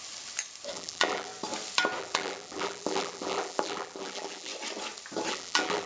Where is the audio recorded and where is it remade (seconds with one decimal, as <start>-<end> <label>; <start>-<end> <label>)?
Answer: 0.0-0.7 recorded; 0.7-1.3 remade; 1.3-2.0 recorded; 2.0-4.5 remade; 4.5-5.3 recorded; 5.3-5.9 remade